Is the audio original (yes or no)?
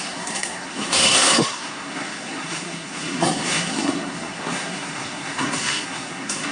no